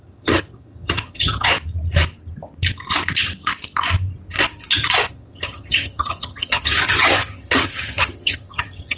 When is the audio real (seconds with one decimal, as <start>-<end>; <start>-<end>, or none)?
1.5-5.1